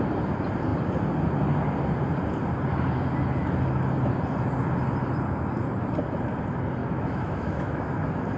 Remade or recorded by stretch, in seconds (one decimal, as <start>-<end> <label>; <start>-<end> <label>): 0.0-6.8 recorded; 6.8-7.8 remade; 7.8-8.4 recorded

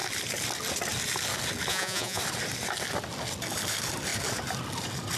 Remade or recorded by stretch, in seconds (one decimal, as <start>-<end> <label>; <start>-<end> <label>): 0.0-1.7 recorded; 1.7-2.2 remade; 2.2-5.2 recorded

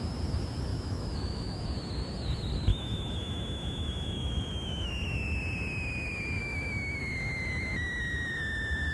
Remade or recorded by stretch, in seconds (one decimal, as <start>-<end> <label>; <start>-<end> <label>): 0.0-0.7 recorded; 0.7-1.6 remade; 1.6-2.7 recorded; 2.7-4.9 remade; 4.9-6.4 recorded; 6.4-7.0 remade; 7.0-8.9 recorded

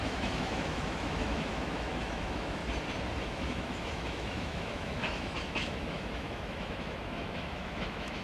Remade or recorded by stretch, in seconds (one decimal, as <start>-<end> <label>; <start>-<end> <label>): 0.0-2.6 remade; 2.6-3.2 recorded; 3.2-8.2 remade

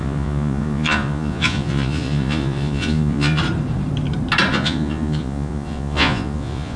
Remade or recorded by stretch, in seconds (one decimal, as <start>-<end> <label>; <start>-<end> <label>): 0.0-3.4 remade; 3.4-4.5 recorded; 4.5-6.8 remade

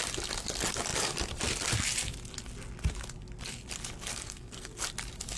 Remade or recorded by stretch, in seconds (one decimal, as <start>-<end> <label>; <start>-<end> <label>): 0.0-4.1 recorded; 4.1-4.8 remade; 4.8-5.4 recorded

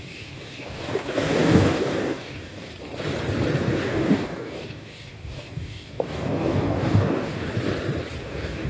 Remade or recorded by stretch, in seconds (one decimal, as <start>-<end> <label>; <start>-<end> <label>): 0.0-2.7 remade; 2.7-3.6 recorded; 3.6-7.5 remade; 7.5-8.2 recorded; 8.2-8.7 remade